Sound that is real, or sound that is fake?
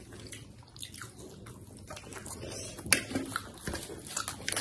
real